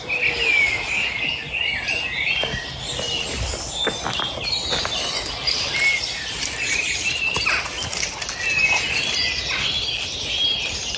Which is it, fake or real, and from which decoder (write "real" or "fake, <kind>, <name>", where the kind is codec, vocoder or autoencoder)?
real